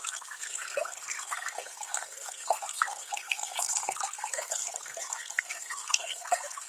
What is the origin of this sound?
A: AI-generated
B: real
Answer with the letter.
A